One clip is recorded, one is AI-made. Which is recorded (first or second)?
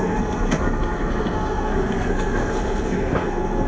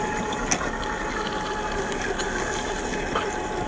second